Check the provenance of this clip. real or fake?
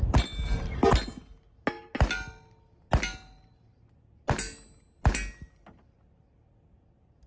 real